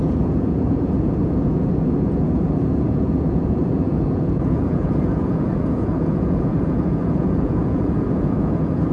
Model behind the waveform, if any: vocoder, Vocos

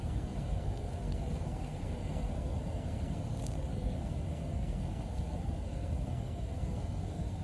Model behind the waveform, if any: codec, SNAC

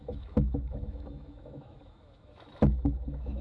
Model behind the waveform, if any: autoencoder, DAC-VAE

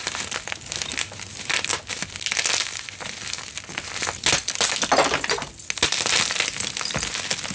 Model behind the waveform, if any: none